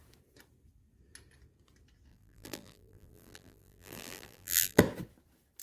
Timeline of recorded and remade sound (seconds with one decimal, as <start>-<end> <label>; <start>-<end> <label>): 0.0-2.1 recorded; 2.1-4.8 remade; 4.8-5.6 recorded